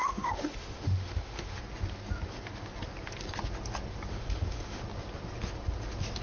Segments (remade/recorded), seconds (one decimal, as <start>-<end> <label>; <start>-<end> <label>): 0.0-1.6 remade; 1.6-4.1 recorded; 4.1-4.8 remade; 4.8-6.2 recorded